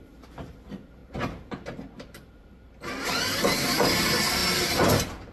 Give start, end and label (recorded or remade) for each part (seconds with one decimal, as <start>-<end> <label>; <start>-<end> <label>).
0.0-4.4 remade; 4.4-5.3 recorded